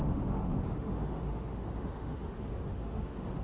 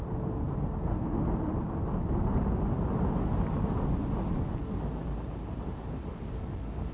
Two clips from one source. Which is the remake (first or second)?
first